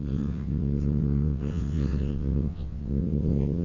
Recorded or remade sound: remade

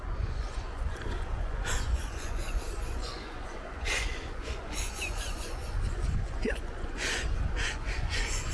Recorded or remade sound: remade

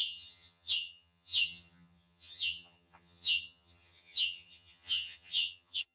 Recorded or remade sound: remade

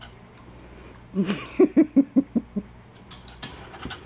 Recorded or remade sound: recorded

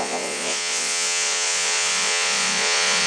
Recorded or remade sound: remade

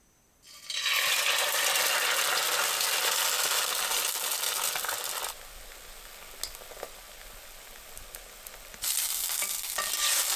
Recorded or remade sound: recorded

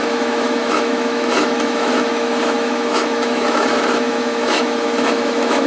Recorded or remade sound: remade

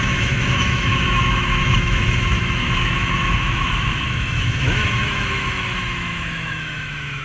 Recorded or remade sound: remade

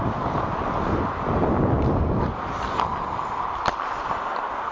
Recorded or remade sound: recorded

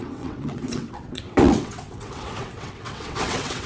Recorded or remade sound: remade